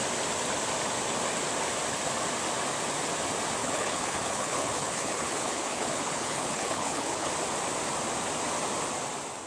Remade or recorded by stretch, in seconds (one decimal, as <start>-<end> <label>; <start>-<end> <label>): 0.0-3.6 recorded; 3.6-7.3 remade; 7.3-9.5 recorded